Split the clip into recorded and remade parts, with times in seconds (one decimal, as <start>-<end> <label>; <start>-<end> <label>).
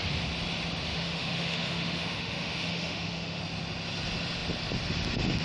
0.0-0.9 recorded; 0.9-3.4 remade; 3.4-5.4 recorded